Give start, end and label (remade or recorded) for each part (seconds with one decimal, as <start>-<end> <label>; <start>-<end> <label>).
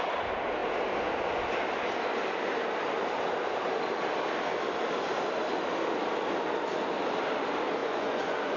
0.0-7.8 recorded; 7.8-8.6 remade